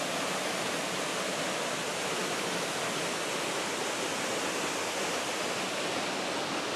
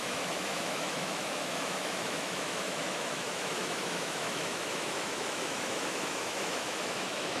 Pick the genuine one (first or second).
first